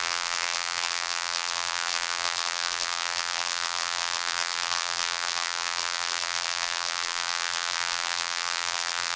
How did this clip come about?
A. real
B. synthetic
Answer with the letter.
B